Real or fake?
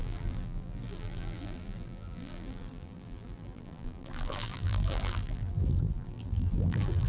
fake